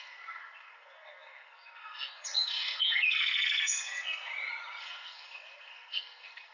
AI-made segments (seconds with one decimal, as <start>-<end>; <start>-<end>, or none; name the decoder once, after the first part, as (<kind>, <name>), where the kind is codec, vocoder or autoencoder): 0.0-4.3 (codec, SNAC); 4.8-6.5